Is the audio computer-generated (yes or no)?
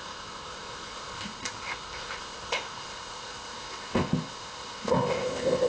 yes